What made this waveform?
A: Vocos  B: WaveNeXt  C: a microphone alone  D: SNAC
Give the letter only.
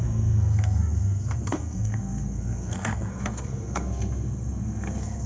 D